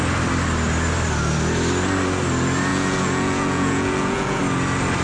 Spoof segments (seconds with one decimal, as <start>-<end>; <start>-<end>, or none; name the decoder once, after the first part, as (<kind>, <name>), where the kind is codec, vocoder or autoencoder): 2.7-4.4 (vocoder, Vocos)